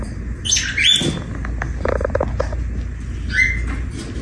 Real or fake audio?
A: real